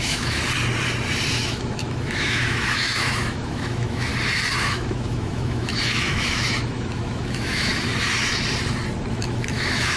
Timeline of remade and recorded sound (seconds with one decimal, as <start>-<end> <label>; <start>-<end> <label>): 0.0-0.4 remade; 0.4-1.3 recorded; 1.3-4.1 remade; 4.1-4.6 recorded; 4.6-7.7 remade; 7.7-9.1 recorded; 9.1-10.0 remade